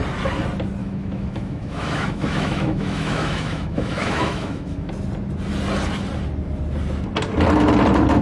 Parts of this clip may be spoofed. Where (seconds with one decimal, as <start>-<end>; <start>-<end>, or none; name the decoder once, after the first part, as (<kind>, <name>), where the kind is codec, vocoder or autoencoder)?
0.8-4.9 (autoencoder, DAC-VAE)